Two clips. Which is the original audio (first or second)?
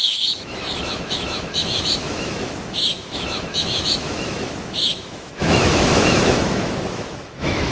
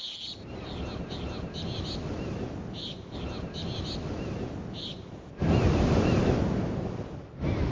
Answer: second